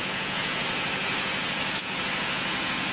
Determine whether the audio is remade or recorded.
remade